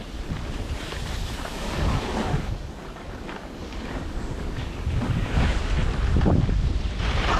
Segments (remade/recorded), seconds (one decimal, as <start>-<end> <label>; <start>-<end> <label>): 0.0-1.2 recorded; 1.2-5.6 remade; 5.6-7.4 recorded